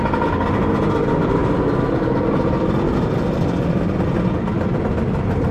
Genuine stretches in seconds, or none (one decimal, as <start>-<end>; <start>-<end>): 0.0-5.5